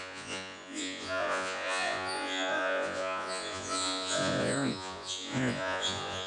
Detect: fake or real fake